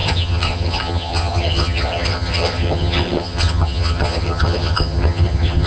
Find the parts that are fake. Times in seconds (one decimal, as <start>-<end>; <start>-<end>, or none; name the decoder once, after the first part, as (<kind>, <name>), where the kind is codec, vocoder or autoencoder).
0.0-5.7 (vocoder, HiFi-GAN)